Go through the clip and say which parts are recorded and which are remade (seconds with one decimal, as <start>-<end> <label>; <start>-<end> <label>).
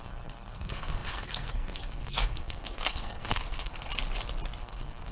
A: 0.0-3.9 remade; 3.9-4.6 recorded; 4.6-5.1 remade